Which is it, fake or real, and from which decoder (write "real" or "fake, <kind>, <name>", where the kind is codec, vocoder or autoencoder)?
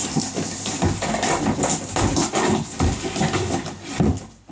real